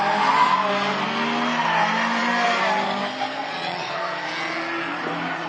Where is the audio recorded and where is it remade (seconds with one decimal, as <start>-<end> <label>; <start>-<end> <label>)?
0.0-3.4 recorded; 3.4-3.9 remade; 3.9-5.5 recorded